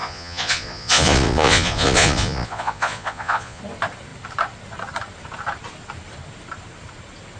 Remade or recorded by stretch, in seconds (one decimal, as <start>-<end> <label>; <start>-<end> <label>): 0.0-3.6 remade; 3.6-7.4 recorded